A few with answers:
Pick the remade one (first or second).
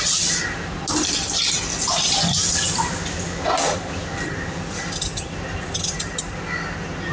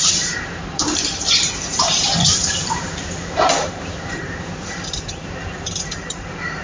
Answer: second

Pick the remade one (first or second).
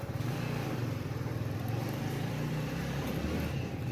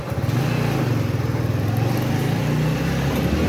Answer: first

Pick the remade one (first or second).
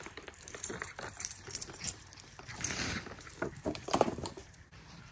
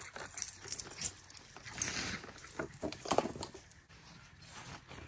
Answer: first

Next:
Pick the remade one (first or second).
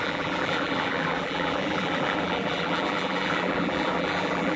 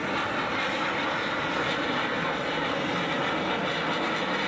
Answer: first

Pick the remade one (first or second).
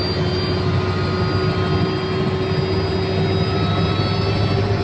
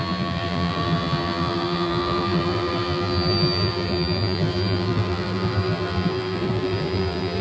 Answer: second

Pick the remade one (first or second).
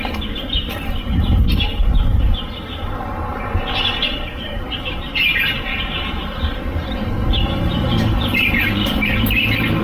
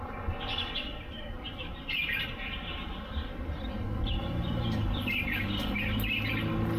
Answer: first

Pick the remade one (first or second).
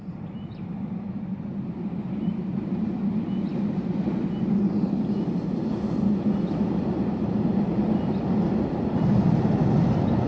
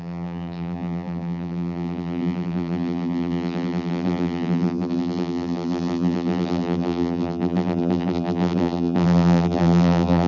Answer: second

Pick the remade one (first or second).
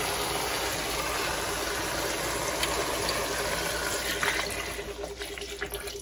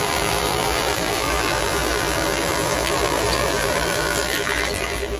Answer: second